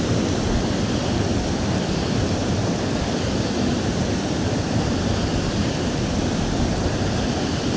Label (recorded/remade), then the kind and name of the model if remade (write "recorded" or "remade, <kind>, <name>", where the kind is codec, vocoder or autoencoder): recorded